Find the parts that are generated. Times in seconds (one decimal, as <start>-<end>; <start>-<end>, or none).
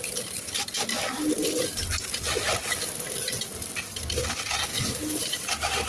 4.7-5.2